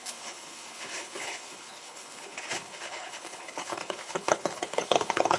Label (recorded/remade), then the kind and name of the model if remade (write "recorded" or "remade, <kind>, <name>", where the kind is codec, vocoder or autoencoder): remade, codec, HILCodec